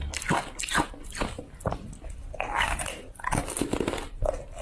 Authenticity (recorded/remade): recorded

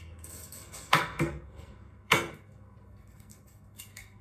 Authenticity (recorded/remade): remade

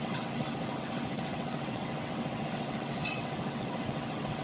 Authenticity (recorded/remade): remade